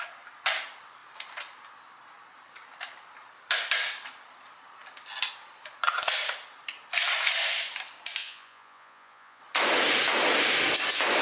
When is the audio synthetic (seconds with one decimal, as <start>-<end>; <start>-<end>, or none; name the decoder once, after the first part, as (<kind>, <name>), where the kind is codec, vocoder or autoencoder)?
8.2-9.4 (vocoder, Vocos)